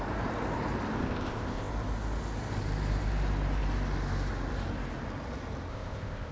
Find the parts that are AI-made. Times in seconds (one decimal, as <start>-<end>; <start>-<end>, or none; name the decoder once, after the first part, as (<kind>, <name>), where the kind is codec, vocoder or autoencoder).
1.0-1.7 (codec, ZipCodec); 5.7-6.3